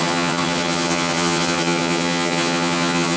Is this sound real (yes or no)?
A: no